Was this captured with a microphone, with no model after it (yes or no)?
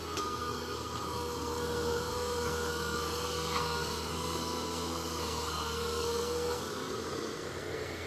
no